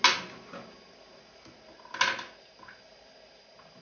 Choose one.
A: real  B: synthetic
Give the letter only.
A